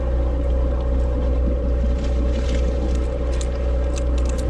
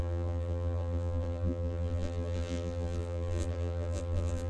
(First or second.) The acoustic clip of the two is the first